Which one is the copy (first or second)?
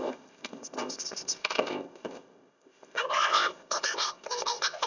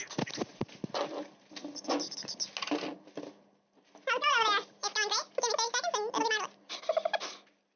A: first